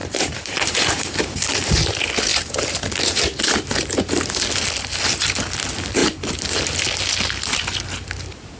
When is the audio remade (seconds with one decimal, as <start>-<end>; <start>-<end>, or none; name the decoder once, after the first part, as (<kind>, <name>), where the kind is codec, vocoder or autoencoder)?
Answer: 0.0-1.8 (vocoder, BigVGAN v2); 2.3-3.4